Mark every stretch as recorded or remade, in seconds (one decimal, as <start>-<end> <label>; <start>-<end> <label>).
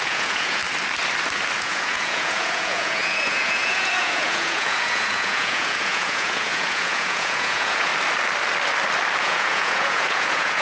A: 0.0-0.6 remade; 0.6-1.6 recorded; 1.6-7.9 remade; 7.9-9.2 recorded; 9.2-10.6 remade